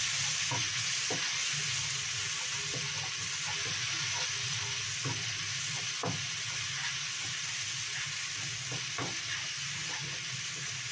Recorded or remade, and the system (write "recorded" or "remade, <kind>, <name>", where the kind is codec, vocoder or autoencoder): recorded